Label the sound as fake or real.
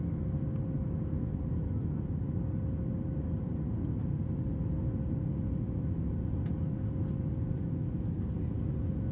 real